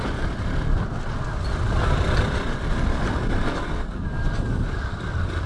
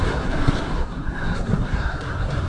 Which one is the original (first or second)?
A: first